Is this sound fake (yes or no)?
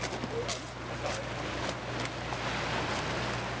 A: no